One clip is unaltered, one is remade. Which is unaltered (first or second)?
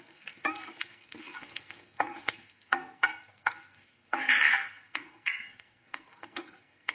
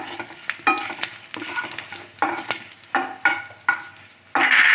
second